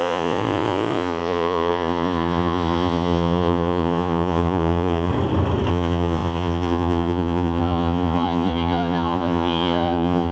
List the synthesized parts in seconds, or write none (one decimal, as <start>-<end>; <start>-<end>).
0.0-5.1; 5.7-10.3